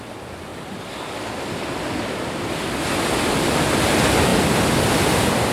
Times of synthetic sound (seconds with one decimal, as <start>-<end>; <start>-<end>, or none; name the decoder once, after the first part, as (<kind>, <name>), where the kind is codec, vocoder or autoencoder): none